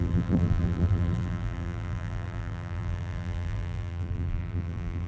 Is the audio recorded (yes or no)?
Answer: no